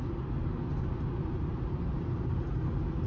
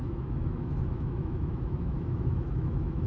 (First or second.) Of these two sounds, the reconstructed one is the second